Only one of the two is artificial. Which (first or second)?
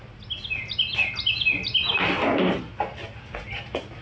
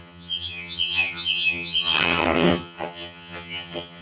second